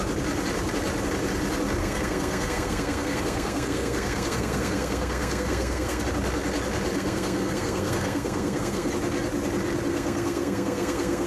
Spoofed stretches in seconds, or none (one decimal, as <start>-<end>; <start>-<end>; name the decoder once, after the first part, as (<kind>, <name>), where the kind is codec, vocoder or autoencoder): 1.8-6.0 (codec, SNAC); 6.9-8.9; 9.9-11.3